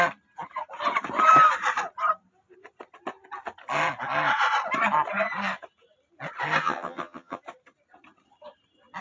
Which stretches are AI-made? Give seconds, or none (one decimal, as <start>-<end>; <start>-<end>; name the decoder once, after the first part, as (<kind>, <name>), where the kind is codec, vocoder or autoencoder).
6.6-7.4 (vocoder, HiFi-GAN)